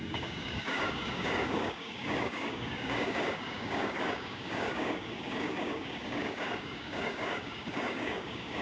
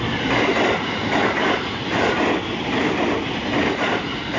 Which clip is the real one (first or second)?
second